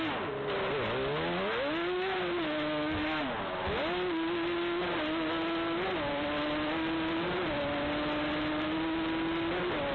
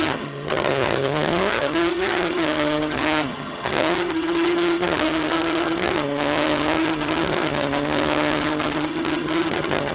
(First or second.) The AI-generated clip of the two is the second